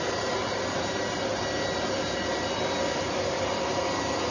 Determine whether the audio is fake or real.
real